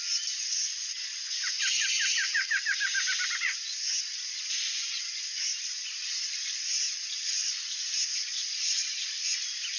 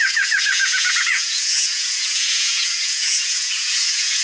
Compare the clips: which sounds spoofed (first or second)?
second